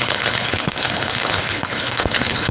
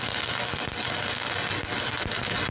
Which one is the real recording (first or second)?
second